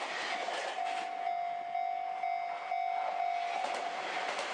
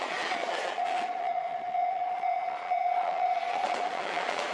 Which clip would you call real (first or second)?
first